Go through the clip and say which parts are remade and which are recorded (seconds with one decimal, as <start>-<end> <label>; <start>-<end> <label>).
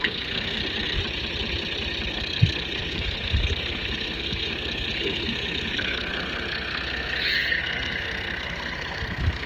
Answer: 0.0-0.6 remade; 0.6-2.1 recorded; 2.1-9.5 remade